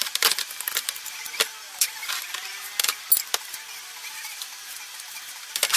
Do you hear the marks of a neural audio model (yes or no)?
no